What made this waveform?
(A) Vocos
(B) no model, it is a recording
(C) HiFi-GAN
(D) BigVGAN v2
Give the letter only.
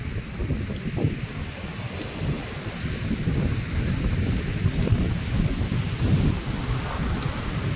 B